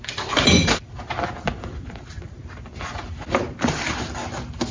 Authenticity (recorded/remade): recorded